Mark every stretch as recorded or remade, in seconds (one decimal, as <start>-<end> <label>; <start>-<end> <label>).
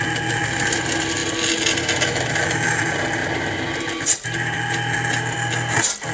0.0-6.1 recorded